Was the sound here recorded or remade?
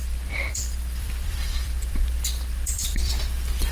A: remade